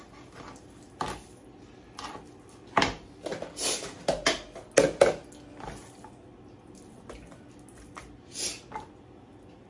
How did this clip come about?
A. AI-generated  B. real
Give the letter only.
B